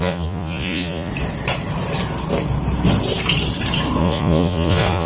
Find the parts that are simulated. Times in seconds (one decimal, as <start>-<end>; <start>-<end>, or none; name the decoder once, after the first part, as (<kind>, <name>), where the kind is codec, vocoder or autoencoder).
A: 0.0-1.1 (vocoder, Vocos); 4.0-5.1